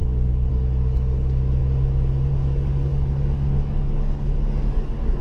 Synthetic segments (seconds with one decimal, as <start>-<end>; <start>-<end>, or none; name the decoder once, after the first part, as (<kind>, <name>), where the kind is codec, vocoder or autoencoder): 0.0-1.6 (codec, DAC); 2.3-5.2